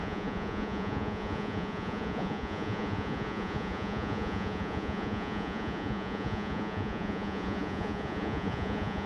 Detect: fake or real fake